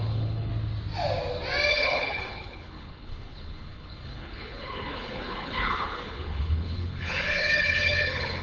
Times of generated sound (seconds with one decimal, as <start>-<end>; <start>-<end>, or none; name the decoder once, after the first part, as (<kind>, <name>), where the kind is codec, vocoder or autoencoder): 0.0-0.5 (codec, HILCodec); 1.7-8.4